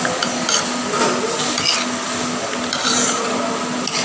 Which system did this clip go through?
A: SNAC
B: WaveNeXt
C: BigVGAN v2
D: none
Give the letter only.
D